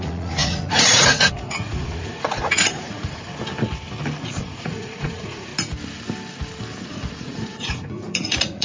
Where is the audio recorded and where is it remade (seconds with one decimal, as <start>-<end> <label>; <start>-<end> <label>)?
0.0-3.3 remade; 3.3-4.2 recorded; 4.2-5.5 remade; 5.5-6.8 recorded; 6.8-8.6 remade